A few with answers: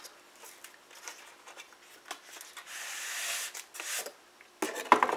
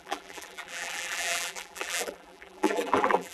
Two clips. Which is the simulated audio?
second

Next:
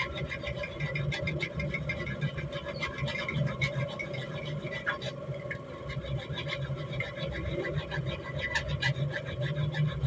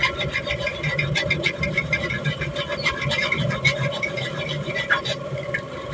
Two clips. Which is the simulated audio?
second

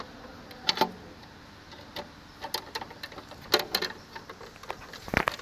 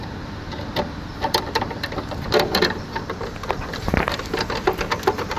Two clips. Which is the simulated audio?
second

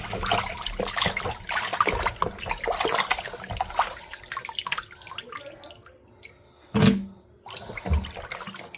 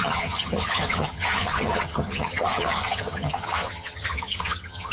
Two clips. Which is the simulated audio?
second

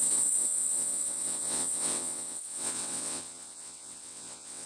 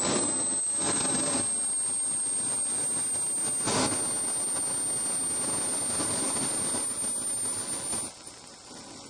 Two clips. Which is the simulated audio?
first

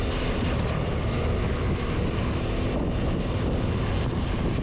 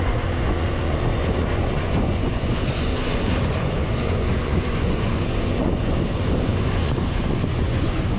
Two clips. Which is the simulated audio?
second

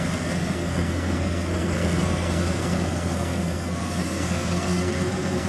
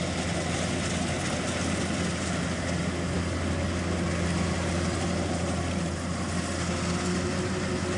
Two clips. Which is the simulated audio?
first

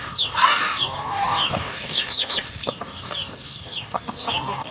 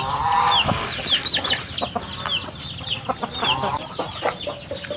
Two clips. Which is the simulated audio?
first